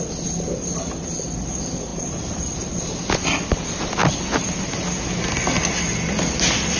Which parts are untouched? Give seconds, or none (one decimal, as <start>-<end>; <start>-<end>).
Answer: 0.0-1.9; 2.6-6.8